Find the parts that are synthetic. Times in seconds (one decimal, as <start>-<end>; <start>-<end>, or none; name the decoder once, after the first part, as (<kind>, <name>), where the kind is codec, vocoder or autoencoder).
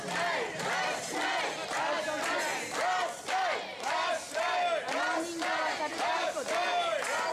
5.9-6.5 (vocoder, BigVGAN v2)